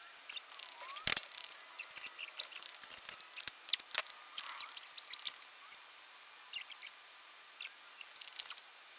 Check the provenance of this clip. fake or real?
real